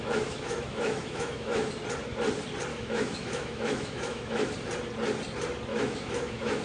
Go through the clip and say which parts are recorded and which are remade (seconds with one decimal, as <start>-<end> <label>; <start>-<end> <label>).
0.0-1.7 remade; 1.7-2.7 recorded; 2.7-4.5 remade; 4.5-5.7 recorded; 5.7-6.6 remade